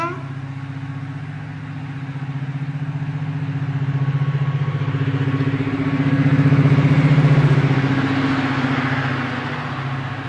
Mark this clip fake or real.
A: real